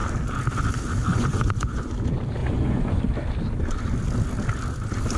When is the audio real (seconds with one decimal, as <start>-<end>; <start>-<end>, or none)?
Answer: 0.0-1.1; 1.9-2.4; 3.0-5.2